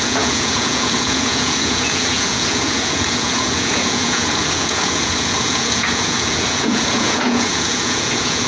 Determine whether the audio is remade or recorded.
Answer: remade